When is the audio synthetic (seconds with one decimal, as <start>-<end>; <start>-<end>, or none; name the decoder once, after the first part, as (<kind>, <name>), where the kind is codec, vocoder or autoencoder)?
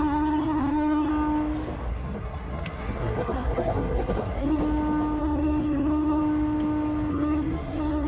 0.0-1.1 (codec, SNAC); 1.9-4.6; 5.2-6.2; 7.1-8.1